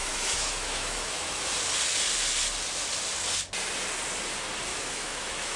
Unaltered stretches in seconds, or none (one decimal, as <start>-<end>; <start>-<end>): 1.5-4.7